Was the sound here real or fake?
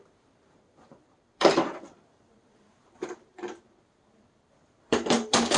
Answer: fake